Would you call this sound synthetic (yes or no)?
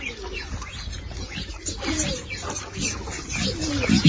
no